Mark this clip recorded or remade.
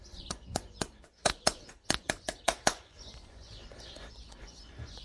remade